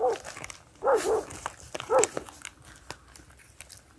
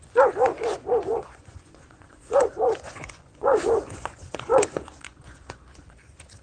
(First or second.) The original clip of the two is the first